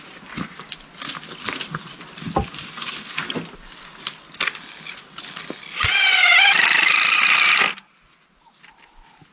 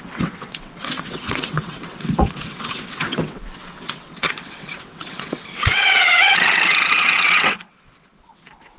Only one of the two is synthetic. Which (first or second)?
second